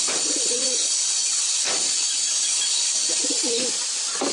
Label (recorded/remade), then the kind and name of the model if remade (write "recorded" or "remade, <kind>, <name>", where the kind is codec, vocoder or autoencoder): recorded